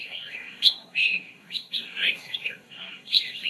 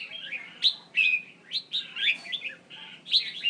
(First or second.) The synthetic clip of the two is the first